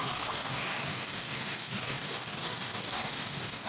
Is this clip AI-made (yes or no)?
yes